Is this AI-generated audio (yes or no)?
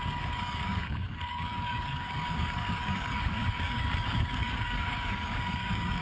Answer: yes